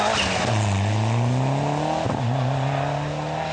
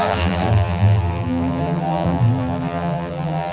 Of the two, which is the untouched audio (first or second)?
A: first